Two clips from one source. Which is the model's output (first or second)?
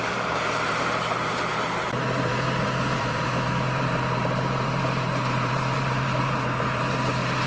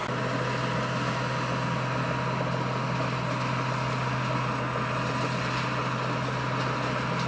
first